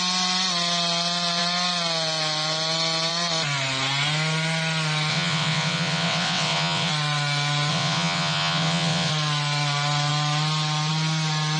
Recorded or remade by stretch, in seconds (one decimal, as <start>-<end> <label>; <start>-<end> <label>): 0.0-5.1 recorded; 5.1-6.9 remade; 6.9-7.7 recorded; 7.7-9.1 remade; 9.1-11.6 recorded

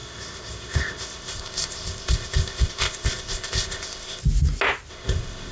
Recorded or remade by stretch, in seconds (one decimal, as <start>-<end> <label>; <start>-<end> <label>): 0.0-4.2 remade; 4.2-4.9 recorded; 4.9-5.5 remade

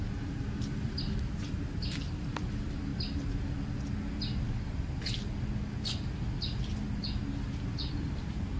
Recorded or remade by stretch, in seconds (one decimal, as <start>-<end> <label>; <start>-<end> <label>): 0.0-2.9 remade; 2.9-7.9 recorded; 7.9-8.6 remade

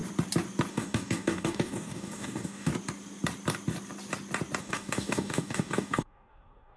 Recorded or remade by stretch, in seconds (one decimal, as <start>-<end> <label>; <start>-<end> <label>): 0.0-0.7 recorded; 0.7-2.7 remade; 2.7-4.6 recorded; 4.6-6.8 remade

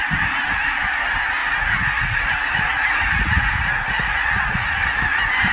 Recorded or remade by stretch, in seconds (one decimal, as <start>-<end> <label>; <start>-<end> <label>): 0.0-1.4 recorded; 1.4-4.7 remade; 4.7-5.5 recorded

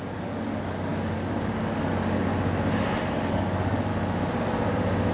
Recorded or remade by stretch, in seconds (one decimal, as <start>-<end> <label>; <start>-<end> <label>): 0.0-2.3 remade; 2.3-3.3 recorded; 3.3-3.9 remade; 3.9-5.1 recorded